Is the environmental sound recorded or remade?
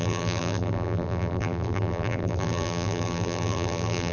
remade